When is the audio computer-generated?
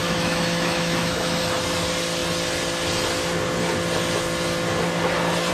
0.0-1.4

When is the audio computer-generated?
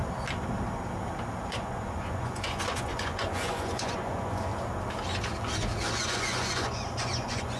1.5-4.5; 6.0-7.6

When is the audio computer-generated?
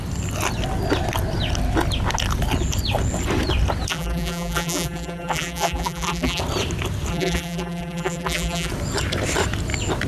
3.9-6.4; 7.1-8.7